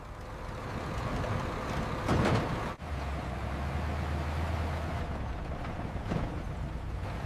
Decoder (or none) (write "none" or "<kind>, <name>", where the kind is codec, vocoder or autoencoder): none